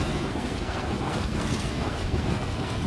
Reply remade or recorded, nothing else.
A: remade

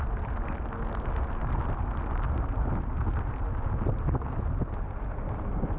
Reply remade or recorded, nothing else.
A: recorded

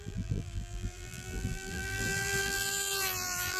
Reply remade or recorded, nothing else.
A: remade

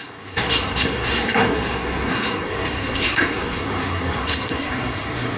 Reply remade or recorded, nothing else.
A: remade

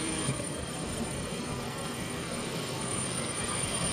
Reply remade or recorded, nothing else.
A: remade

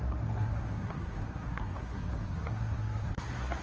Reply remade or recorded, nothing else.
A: remade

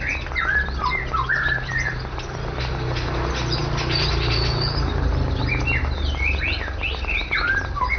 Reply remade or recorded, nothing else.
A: recorded